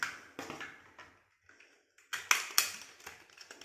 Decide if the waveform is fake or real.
real